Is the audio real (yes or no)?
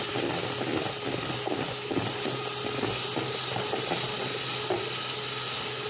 yes